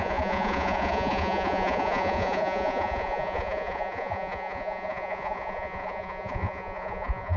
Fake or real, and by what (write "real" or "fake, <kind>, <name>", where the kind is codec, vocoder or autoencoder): fake, vocoder, Vocos